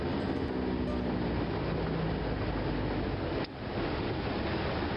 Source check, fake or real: real